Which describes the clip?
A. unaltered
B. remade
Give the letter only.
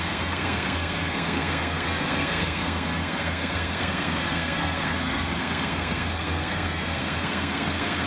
B